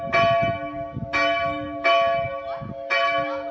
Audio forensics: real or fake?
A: real